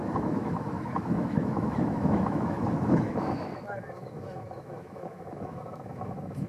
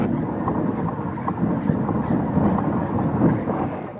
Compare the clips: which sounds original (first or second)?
second